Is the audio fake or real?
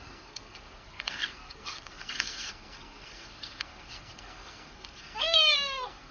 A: fake